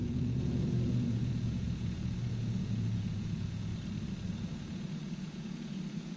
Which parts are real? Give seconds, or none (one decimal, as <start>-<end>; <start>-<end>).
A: 3.7-4.3